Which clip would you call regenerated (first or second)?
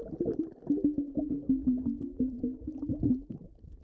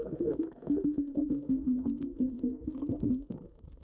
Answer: second